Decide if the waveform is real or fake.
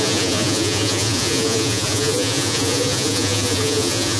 fake